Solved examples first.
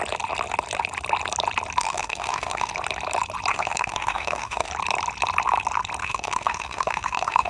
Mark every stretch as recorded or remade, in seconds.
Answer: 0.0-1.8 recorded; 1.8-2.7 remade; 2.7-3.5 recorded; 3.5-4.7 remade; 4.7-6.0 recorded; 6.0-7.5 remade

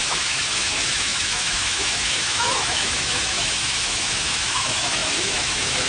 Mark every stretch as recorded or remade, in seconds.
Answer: 0.0-5.9 remade

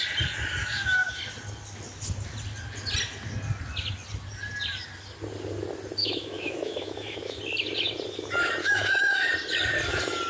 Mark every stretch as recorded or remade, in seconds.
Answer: 0.0-0.6 recorded; 0.6-1.2 remade; 1.2-6.0 recorded; 6.0-7.4 remade; 7.4-8.6 recorded; 8.6-9.3 remade; 9.3-10.3 recorded

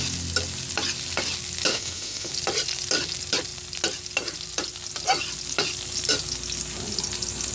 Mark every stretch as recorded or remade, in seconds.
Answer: 0.0-1.7 recorded; 1.7-2.3 remade; 2.3-7.5 recorded